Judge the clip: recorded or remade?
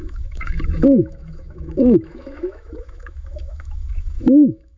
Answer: remade